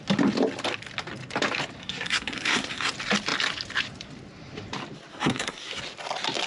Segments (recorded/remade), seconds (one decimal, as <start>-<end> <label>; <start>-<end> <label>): 0.0-1.8 recorded; 1.8-2.9 remade; 2.9-5.1 recorded; 5.1-5.8 remade; 5.8-6.5 recorded